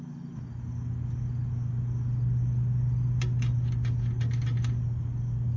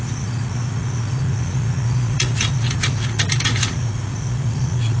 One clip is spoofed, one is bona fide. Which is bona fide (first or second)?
first